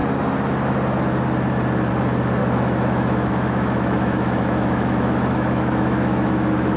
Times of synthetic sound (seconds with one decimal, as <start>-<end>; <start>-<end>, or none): 2.4-6.8